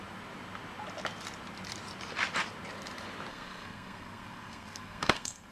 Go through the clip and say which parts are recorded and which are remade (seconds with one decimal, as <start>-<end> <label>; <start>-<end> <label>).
0.0-3.3 recorded; 3.3-5.5 remade